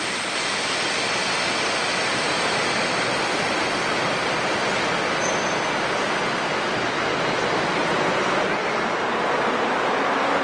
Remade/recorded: recorded